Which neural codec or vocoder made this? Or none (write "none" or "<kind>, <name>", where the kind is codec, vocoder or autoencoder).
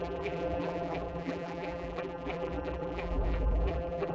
vocoder, BigVGAN v2